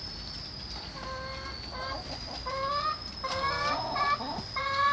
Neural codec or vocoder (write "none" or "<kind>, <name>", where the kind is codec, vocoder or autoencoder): none